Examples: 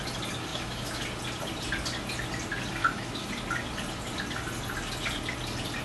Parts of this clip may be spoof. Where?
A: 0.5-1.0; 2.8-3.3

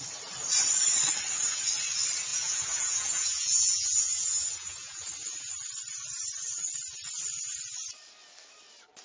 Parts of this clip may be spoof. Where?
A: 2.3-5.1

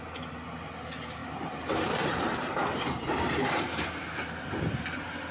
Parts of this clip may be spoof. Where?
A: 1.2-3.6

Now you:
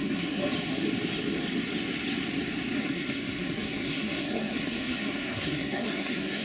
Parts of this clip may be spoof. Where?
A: 0.0-0.4; 2.8-6.4